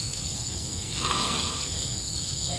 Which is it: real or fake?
fake